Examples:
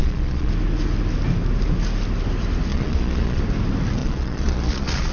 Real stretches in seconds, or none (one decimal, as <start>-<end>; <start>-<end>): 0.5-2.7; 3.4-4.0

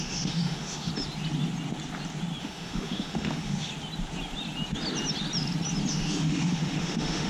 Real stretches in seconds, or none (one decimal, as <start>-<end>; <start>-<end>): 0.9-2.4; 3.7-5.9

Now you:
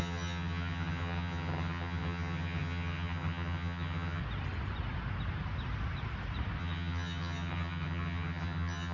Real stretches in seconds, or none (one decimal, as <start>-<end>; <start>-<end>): 4.2-6.6